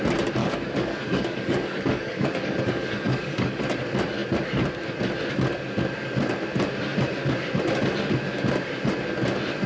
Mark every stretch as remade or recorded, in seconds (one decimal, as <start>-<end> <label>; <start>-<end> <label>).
0.0-0.4 recorded; 0.4-3.6 remade; 3.6-9.7 recorded